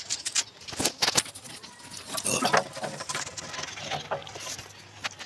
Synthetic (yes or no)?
no